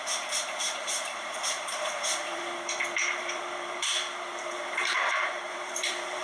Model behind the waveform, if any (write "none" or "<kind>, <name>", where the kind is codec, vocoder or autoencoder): vocoder, BigVGAN v2